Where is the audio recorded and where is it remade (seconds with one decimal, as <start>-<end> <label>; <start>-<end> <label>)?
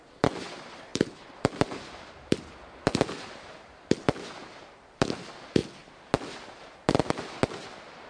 0.0-0.9 recorded; 0.9-2.5 remade; 2.5-8.1 recorded